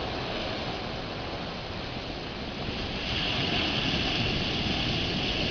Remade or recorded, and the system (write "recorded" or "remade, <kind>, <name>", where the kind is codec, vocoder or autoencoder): recorded